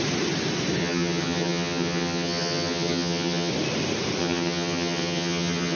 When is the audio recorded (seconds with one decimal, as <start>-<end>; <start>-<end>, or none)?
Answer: 0.0-0.8; 3.5-4.2